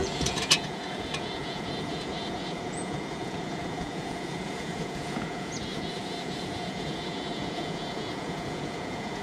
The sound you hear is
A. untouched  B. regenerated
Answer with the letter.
B